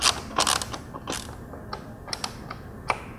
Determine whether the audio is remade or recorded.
recorded